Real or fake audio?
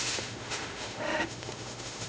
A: fake